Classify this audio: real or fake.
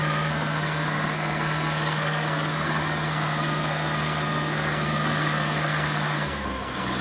fake